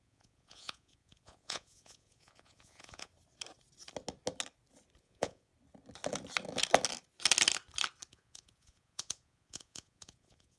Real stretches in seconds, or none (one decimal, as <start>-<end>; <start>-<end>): 3.1-5.0; 5.5-8.1